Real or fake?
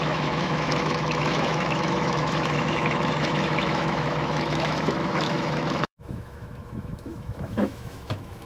fake